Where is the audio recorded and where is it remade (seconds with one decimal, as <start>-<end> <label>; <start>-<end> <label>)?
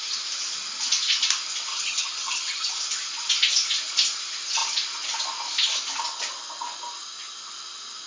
0.0-1.7 recorded; 1.7-2.7 remade; 2.7-8.1 recorded